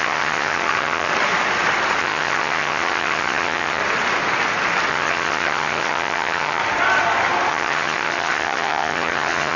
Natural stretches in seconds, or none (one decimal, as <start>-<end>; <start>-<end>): 1.1-2.0; 3.8-4.9; 6.6-7.5

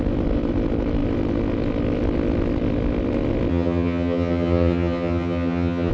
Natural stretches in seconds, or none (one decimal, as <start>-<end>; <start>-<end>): 0.0-3.5

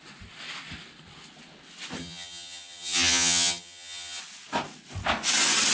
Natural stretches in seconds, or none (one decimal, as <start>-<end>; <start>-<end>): 0.0-2.0; 4.2-5.7

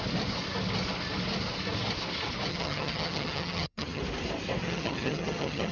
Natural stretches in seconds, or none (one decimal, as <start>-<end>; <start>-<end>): 0.0-2.5; 4.0-4.6

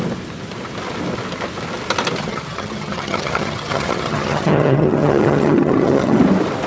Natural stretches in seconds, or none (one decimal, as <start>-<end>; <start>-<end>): 0.0-2.2; 6.2-6.7

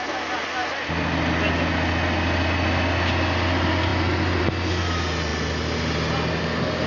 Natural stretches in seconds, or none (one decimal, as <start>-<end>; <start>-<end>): 0.0-6.9

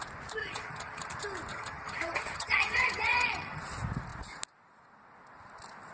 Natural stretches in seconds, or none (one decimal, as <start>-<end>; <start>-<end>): 0.0-0.4; 1.1-1.5; 3.6-5.9

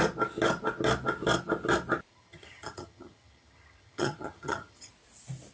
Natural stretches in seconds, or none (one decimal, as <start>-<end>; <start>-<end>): 0.0-2.1; 4.9-5.5